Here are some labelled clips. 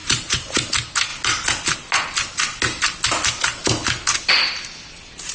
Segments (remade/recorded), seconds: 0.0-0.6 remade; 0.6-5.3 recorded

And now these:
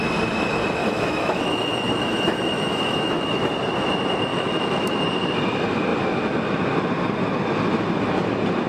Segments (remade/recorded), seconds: 0.0-0.8 recorded; 0.8-3.5 remade; 3.5-4.3 recorded; 4.3-5.0 remade; 5.0-8.7 recorded

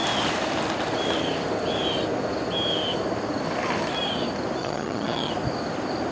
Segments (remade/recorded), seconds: 0.0-4.6 recorded; 4.6-5.3 remade; 5.3-6.1 recorded

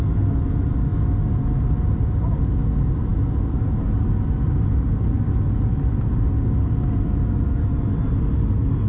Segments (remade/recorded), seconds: 0.0-8.9 recorded